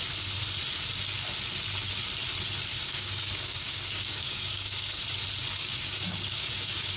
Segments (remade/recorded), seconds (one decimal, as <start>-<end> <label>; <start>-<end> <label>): 0.0-2.7 recorded; 2.7-5.0 remade; 5.0-5.6 recorded; 5.6-7.0 remade